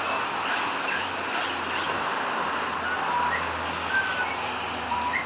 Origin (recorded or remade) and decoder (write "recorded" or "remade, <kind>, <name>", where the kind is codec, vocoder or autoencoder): recorded